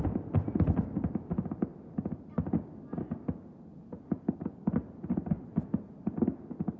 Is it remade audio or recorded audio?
recorded